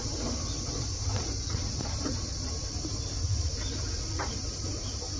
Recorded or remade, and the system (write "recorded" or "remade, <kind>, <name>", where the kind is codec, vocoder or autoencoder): remade, vocoder, BigVGAN v2